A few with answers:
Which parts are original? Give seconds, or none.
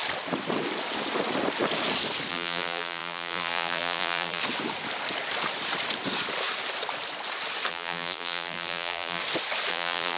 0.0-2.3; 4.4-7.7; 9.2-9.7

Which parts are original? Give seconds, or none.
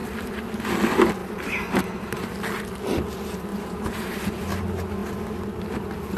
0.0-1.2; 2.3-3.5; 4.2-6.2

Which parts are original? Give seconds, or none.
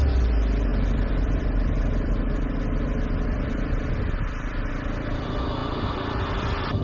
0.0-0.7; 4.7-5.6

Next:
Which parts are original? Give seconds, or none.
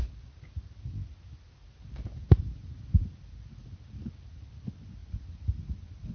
0.0-6.1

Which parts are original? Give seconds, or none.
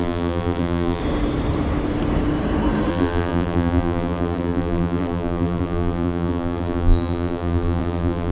1.0-2.9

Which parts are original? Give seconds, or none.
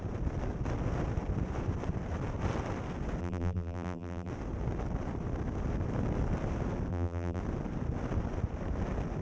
0.0-3.2; 4.3-6.9; 7.4-9.2